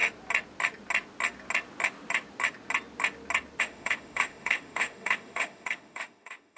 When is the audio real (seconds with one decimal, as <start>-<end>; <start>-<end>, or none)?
0.0-3.6